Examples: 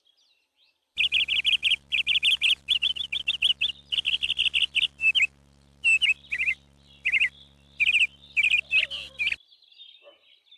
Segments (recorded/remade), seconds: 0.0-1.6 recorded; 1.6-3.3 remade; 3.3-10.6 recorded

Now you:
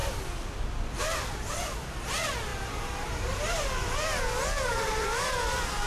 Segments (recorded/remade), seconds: 0.0-1.0 recorded; 1.0-5.9 remade

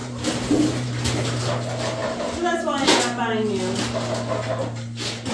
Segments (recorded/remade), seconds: 0.0-1.4 remade; 1.4-2.0 recorded; 2.0-3.2 remade; 3.2-5.3 recorded

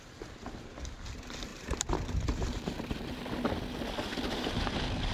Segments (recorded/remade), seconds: 0.0-1.5 recorded; 1.5-3.2 remade; 3.2-5.1 recorded

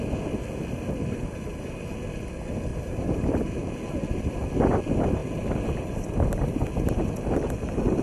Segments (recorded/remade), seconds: 0.0-2.7 recorded; 2.7-3.7 remade; 3.7-8.0 recorded

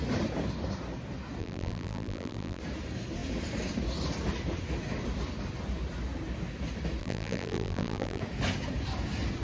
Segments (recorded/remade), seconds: 0.0-1.4 recorded; 1.4-2.6 remade; 2.6-7.0 recorded; 7.0-8.2 remade; 8.2-9.4 recorded